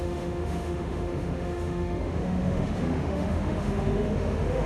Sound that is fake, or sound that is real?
fake